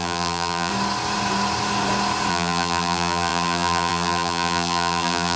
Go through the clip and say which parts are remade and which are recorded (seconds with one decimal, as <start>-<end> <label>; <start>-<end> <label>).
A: 0.0-0.7 remade; 0.7-2.3 recorded; 2.3-5.4 remade